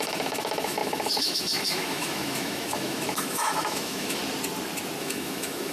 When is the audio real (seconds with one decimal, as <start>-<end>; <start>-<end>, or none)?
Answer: 4.2-5.0

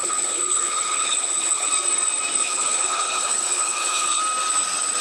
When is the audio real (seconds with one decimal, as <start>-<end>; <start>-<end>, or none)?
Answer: 1.7-2.4; 4.2-5.0

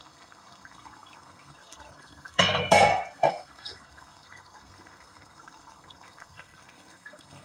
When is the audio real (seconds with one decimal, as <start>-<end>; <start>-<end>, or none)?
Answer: none

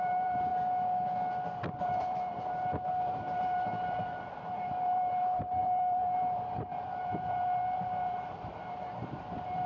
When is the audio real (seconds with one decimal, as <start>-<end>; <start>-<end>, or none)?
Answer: 0.5-1.6

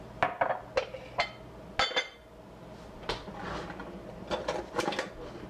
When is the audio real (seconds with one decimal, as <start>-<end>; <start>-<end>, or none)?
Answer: 0.0-5.5

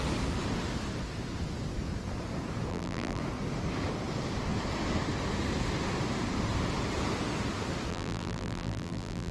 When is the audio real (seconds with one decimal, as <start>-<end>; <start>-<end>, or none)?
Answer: 0.0-2.7; 3.2-7.9

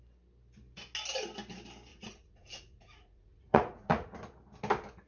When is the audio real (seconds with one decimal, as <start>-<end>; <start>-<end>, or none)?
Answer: 0.0-1.9; 4.2-5.1